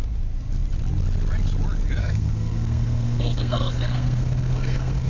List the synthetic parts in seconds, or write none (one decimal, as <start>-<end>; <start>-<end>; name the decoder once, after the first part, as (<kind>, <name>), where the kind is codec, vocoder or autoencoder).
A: 2.0-5.1 (codec, SNAC)